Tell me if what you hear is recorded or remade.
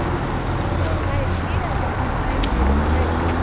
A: recorded